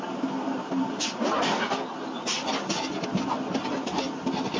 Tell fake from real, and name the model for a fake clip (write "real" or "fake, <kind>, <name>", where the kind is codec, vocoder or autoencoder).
real